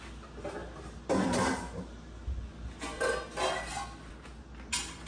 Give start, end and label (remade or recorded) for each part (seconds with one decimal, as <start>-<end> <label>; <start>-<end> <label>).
0.0-5.1 recorded